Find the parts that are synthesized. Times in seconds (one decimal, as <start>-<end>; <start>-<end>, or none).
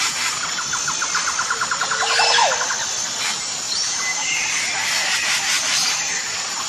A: 3.8-6.2